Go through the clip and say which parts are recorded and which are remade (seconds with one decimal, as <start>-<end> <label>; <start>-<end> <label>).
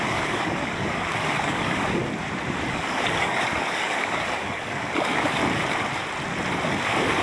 0.0-2.0 remade; 2.0-2.7 recorded; 2.7-5.4 remade; 5.4-6.7 recorded; 6.7-7.2 remade